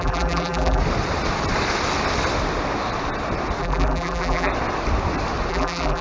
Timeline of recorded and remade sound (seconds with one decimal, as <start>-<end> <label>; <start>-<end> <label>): 0.0-0.8 remade; 0.8-3.6 recorded; 3.6-4.5 remade; 4.5-5.5 recorded; 5.5-6.0 remade